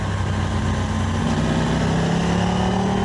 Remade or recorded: recorded